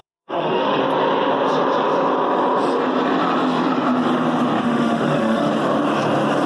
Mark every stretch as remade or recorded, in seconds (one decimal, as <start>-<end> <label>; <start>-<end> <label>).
0.0-0.8 remade; 0.8-4.6 recorded; 4.6-5.5 remade; 5.5-6.5 recorded